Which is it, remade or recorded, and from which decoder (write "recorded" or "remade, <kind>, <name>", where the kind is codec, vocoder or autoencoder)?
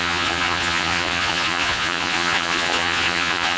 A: remade, vocoder, Vocos